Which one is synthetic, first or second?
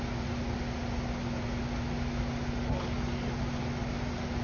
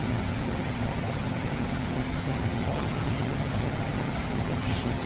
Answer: second